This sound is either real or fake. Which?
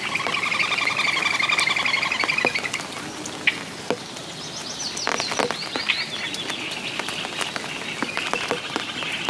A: real